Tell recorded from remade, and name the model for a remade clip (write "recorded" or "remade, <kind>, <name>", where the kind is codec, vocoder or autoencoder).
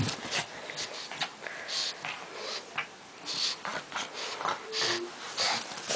recorded